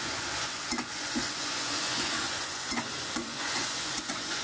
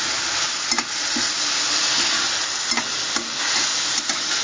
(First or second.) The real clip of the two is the second